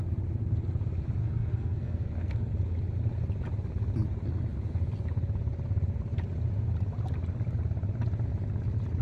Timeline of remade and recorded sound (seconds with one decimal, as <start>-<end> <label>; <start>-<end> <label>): 0.0-1.2 recorded; 1.2-2.5 remade; 2.5-9.0 recorded